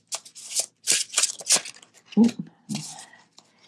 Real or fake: real